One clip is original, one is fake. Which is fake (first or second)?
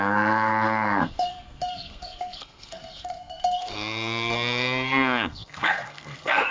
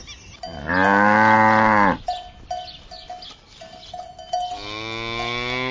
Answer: first